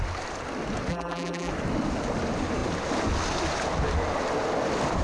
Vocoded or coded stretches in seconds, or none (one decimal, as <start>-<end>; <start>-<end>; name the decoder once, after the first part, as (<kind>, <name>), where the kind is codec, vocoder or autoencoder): 0.9-1.5 (vocoder, BigVGAN v2)